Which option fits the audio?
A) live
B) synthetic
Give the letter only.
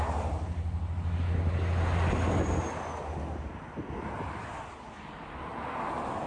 A